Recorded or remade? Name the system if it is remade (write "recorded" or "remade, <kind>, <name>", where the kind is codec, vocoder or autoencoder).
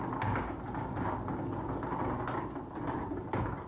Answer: recorded